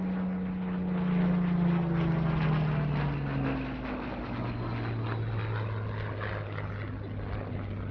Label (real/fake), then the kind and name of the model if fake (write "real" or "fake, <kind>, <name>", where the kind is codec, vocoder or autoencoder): real